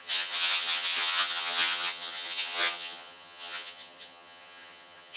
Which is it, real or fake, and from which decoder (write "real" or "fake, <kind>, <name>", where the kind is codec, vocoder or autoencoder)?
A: fake, vocoder, HiFi-GAN